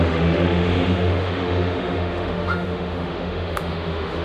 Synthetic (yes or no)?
yes